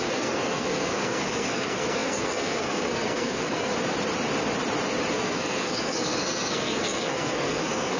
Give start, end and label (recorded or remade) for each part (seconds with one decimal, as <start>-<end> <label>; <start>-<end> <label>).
0.0-3.7 remade; 3.7-5.1 recorded; 5.1-8.0 remade